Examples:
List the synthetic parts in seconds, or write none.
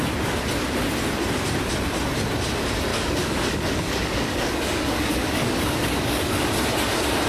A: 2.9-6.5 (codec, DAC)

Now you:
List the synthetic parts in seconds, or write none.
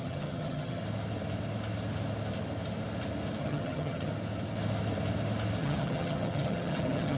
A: 0.0-0.8 (vocoder, HiFi-GAN); 3.4-4.1; 5.6-7.2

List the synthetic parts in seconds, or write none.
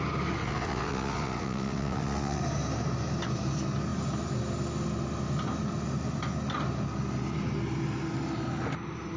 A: 0.4-2.4 (vocoder, WaveNeXt)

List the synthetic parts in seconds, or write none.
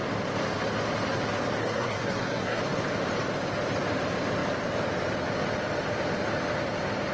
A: 1.6-2.6 (codec, SNAC)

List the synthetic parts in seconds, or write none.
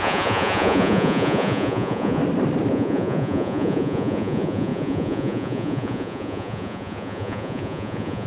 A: 0.0-2.2 (vocoder, Vocos); 2.7-8.3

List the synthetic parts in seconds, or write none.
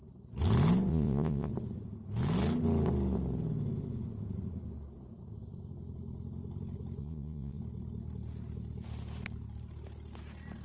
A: 0.9-1.5 (vocoder, Vocos); 7.0-7.6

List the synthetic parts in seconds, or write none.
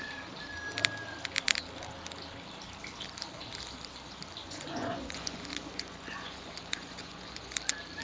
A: 4.4-7.5 (vocoder, Vocos)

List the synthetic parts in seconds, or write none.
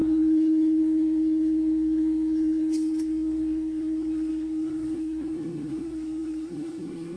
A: 0.0-7.2 (codec, SNAC)